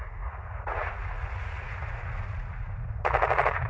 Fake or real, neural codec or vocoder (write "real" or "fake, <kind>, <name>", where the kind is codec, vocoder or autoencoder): fake, vocoder, Vocos